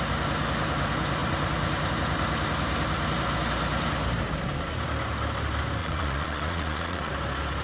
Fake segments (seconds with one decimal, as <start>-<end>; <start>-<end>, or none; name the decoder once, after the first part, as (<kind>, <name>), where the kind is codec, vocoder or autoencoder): 5.8-7.1 (vocoder, Vocos)